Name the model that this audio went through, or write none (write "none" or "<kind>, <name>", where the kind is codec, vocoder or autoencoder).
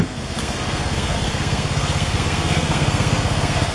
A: codec, SNAC